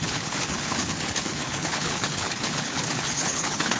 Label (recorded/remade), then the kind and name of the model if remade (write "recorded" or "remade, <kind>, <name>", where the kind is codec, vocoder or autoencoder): remade, codec, HILCodec